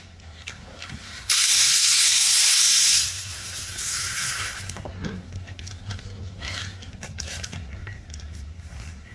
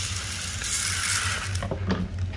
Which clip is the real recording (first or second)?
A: second